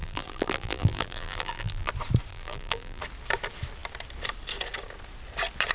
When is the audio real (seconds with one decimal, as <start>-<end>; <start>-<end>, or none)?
1.9-2.3; 3.0-5.7